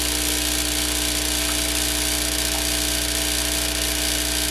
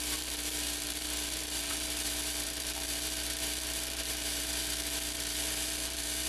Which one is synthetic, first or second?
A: second